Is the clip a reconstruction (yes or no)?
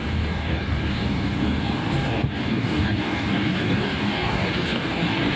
yes